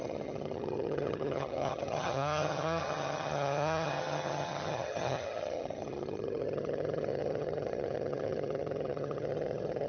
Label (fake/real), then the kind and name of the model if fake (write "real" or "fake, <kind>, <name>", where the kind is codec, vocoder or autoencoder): fake, vocoder, HiFi-GAN